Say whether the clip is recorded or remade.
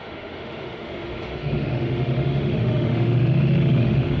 remade